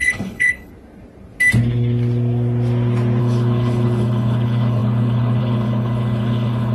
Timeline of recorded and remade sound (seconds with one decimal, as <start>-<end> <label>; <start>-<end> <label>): 0.0-0.7 remade; 0.7-3.2 recorded; 3.2-6.7 remade